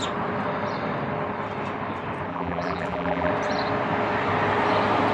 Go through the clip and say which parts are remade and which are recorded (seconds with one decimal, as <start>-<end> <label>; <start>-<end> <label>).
0.0-2.3 recorded; 2.3-3.3 remade; 3.3-5.1 recorded